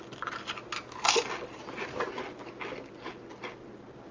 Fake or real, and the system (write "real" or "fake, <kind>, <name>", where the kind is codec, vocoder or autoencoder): real